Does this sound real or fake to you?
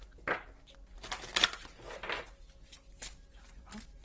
real